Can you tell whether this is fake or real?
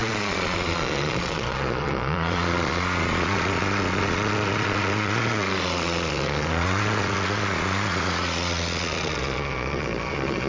fake